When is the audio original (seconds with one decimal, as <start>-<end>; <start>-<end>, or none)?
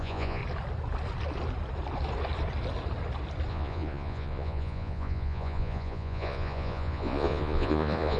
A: 0.4-3.5